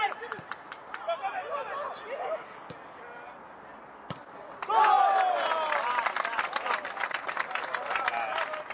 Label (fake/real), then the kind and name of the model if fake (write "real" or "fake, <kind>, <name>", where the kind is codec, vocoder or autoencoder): real